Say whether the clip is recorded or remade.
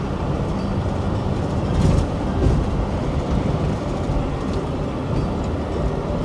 remade